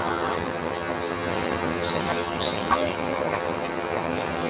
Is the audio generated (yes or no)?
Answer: yes